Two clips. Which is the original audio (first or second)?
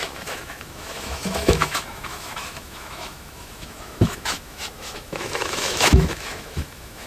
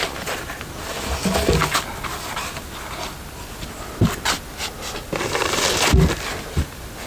second